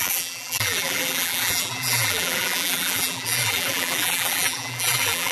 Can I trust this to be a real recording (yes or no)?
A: no